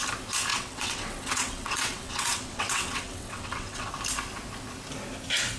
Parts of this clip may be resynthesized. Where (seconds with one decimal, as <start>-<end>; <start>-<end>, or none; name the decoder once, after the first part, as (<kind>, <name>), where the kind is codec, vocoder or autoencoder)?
0.5-3.9 (vocoder, WaveNeXt)